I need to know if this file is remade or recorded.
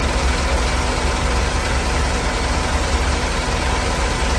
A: recorded